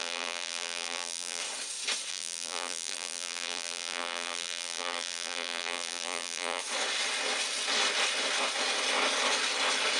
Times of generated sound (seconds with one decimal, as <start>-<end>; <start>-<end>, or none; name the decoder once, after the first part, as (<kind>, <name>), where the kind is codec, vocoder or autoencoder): 0.0-1.4 (vocoder, BigVGAN v2); 2.1-6.6